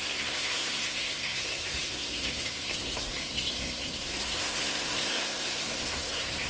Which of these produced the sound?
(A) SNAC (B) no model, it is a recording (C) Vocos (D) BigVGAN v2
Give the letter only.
A